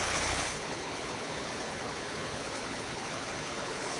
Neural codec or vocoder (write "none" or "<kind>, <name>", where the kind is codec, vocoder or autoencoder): codec, HILCodec